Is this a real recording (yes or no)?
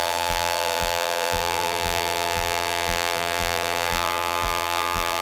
no